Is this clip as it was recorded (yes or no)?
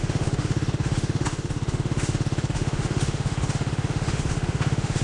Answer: no